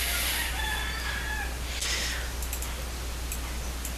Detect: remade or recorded recorded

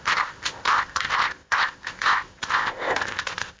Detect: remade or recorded remade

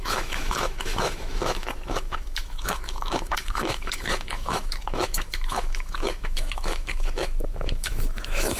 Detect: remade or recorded remade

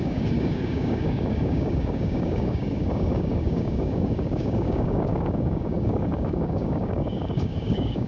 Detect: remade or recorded remade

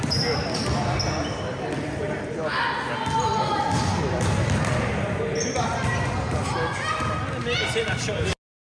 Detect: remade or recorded recorded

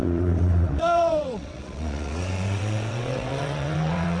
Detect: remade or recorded remade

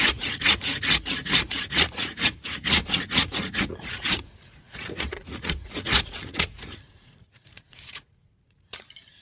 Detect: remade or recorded remade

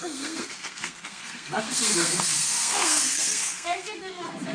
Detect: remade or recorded remade